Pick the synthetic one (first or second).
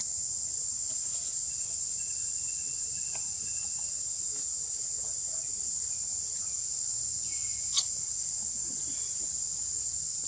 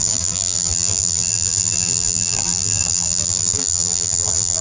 second